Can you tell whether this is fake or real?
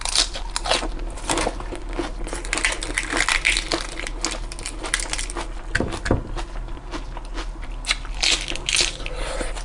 real